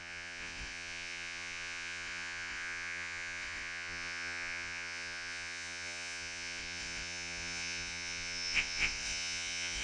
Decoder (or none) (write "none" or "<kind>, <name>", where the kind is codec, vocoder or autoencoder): vocoder, Vocos